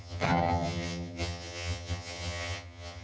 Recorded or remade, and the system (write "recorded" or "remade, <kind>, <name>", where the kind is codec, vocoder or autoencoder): remade, vocoder, HiFi-GAN